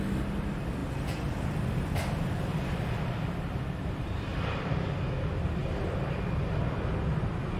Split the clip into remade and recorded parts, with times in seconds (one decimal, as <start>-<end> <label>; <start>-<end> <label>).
0.0-0.8 recorded; 0.8-3.3 remade; 3.3-4.3 recorded; 4.3-4.9 remade; 4.9-7.6 recorded